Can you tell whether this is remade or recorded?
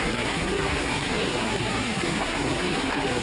remade